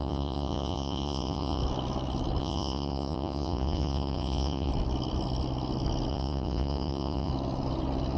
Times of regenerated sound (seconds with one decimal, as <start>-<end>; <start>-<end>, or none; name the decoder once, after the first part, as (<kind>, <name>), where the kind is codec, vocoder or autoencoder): 0.0-1.6 (vocoder, Vocos); 2.4-4.7; 6.1-7.3